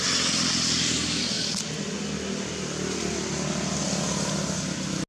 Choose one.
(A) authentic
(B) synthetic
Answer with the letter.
A